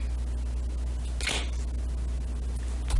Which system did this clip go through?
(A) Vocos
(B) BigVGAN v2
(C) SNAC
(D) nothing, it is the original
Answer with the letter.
D